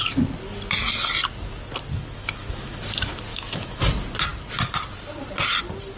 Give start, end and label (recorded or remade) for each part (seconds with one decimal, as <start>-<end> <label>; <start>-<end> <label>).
0.0-1.9 recorded; 1.9-2.8 remade; 2.8-3.3 recorded; 3.3-3.8 remade; 3.8-6.0 recorded